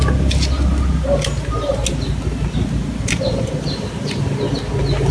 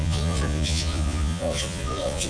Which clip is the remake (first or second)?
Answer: second